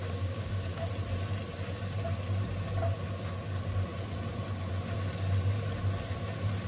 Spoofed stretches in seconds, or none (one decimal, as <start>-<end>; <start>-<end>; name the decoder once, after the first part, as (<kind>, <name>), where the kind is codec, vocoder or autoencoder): 0.0-0.8 (codec, DAC)